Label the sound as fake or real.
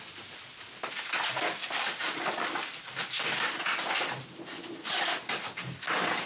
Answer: real